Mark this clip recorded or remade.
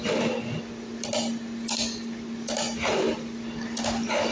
recorded